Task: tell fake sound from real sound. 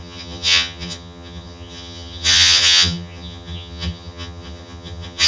fake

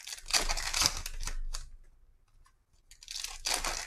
real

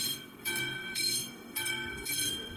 fake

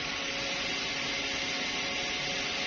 real